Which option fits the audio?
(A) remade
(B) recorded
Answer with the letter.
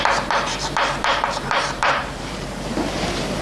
A